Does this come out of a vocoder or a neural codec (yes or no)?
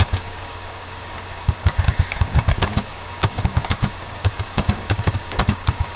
yes